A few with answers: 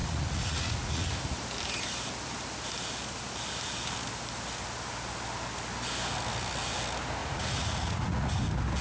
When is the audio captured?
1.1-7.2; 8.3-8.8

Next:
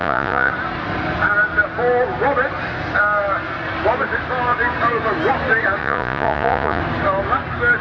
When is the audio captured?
0.5-5.8; 6.8-7.8